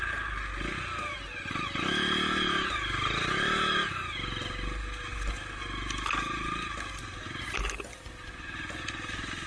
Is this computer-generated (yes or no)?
no